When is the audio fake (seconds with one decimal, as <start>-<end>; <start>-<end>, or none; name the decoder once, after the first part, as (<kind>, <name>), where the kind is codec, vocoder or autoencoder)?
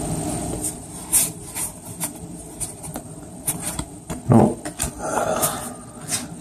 0.4-4.2 (vocoder, BigVGAN v2)